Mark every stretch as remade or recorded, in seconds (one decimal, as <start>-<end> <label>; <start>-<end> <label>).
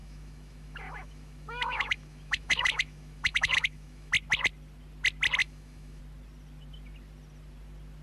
0.0-4.1 remade; 4.1-5.4 recorded; 5.4-6.0 remade; 6.0-8.0 recorded